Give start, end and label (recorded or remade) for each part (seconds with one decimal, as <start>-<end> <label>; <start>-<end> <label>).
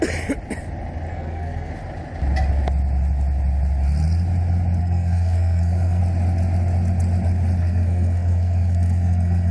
0.0-1.1 recorded; 1.1-1.7 remade; 1.7-4.8 recorded; 4.8-6.0 remade; 6.0-7.6 recorded; 7.6-9.5 remade